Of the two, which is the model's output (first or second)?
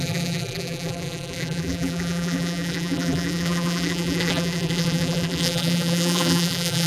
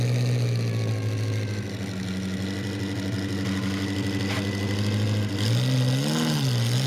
first